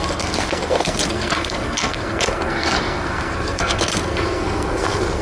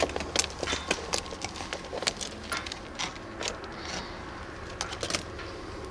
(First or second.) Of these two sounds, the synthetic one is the first